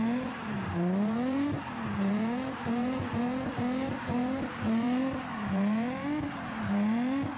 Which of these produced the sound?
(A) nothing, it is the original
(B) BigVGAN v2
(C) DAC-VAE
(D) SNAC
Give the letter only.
B